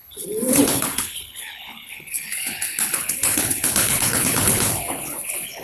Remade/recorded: remade